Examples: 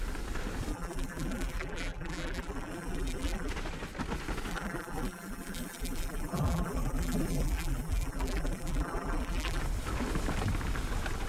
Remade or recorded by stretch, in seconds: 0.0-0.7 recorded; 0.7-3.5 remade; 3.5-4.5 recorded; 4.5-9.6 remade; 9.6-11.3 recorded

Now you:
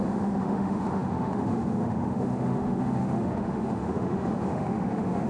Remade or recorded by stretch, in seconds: 0.0-5.3 remade

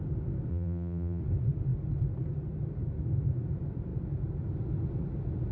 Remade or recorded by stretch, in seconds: 0.0-0.5 recorded; 0.5-1.2 remade; 1.2-5.5 recorded

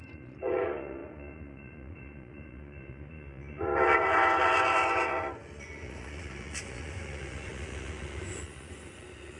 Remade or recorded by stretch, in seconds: 0.0-9.4 remade

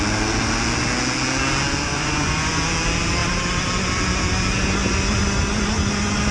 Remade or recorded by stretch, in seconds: 0.0-1.8 recorded; 1.8-2.6 remade; 2.6-6.3 recorded

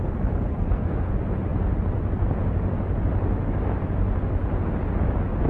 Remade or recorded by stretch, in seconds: 0.0-0.5 recorded; 0.5-1.1 remade; 1.1-5.5 recorded

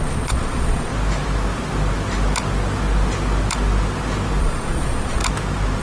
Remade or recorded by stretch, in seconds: 0.0-0.9 remade; 0.9-4.4 recorded; 4.4-5.2 remade; 5.2-5.8 recorded